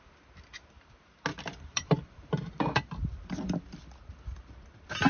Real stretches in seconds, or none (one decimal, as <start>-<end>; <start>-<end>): 0.0-1.3; 4.4-5.1